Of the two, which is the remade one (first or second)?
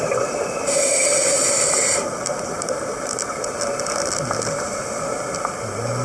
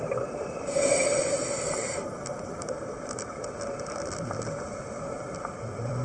second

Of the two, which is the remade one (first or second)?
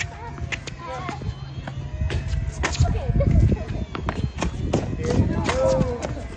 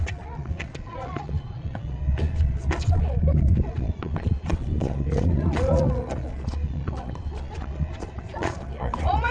second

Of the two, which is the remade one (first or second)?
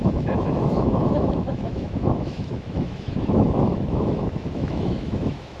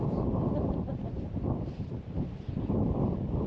first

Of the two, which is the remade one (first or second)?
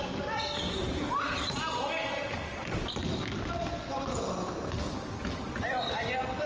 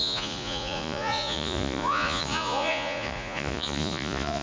second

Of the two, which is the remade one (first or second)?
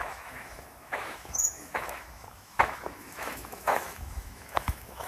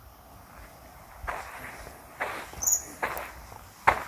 first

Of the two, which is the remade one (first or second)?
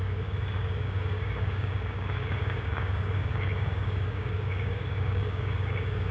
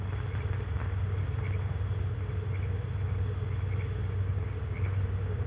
first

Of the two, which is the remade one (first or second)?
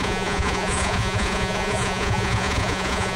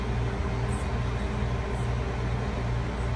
first